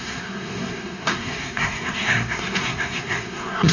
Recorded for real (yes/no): no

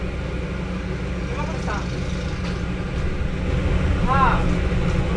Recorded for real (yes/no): yes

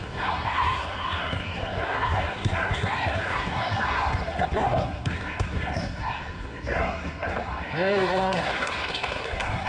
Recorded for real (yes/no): no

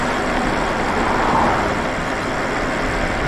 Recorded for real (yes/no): yes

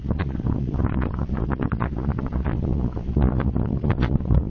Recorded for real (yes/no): no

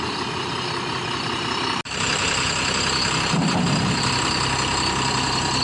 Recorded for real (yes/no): yes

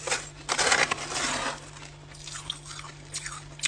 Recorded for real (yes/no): yes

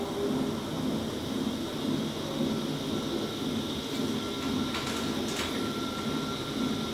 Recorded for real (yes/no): yes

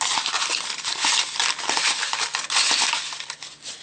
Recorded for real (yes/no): yes